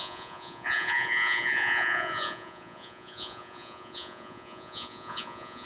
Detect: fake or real fake